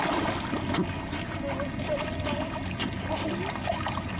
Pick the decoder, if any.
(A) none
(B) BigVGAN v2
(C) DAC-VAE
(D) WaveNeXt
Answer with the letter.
A